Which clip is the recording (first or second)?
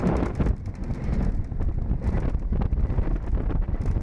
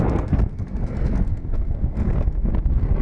first